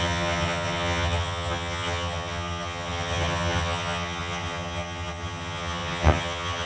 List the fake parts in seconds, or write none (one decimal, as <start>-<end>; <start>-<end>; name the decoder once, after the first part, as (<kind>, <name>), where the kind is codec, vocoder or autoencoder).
0.0-6.7 (vocoder, HiFi-GAN)